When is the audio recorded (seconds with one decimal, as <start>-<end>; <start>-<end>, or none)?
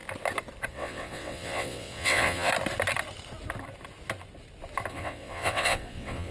0.0-0.7; 2.5-4.9